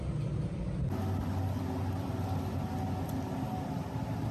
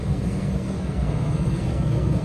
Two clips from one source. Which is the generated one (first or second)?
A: second